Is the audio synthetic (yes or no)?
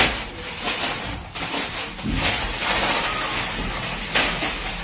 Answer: no